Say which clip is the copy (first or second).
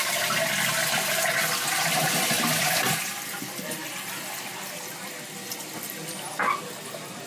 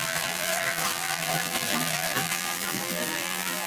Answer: second